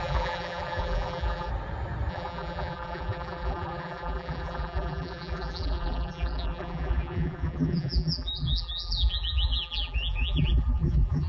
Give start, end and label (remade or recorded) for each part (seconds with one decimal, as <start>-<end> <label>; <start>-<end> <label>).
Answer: 0.0-1.5 remade; 1.5-2.1 recorded; 2.1-11.3 remade